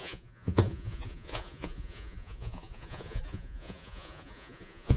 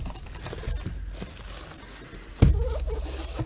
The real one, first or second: second